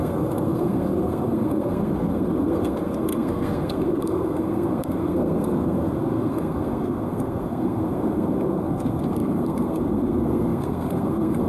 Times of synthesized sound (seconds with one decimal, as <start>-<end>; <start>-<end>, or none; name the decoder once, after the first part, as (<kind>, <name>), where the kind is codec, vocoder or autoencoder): 0.0-11.5 (codec, SNAC)